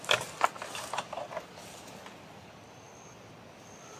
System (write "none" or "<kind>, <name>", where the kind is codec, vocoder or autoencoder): none